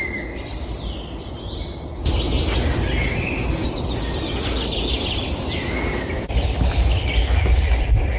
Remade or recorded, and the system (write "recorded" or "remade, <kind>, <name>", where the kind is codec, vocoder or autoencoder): recorded